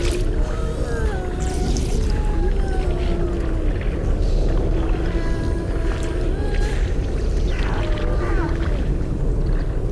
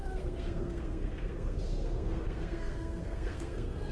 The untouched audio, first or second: first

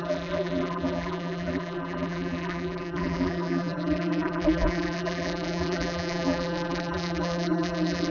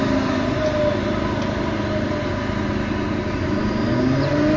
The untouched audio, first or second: second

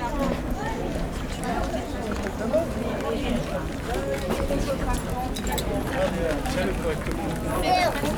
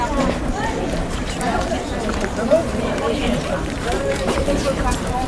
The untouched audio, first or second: first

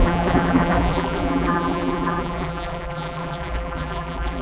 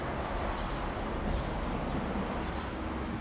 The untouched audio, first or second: second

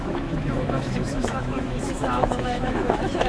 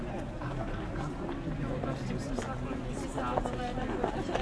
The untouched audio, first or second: second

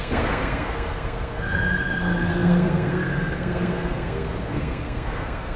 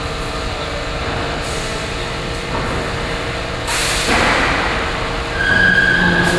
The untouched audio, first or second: second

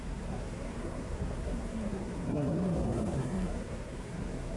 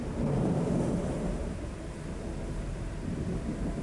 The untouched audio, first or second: second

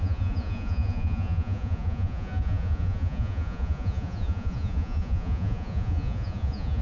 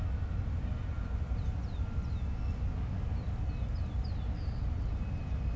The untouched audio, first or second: second